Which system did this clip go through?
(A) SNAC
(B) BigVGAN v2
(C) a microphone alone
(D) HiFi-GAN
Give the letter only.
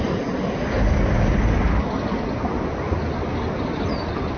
C